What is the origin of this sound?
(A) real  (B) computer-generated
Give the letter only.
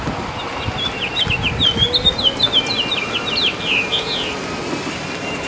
A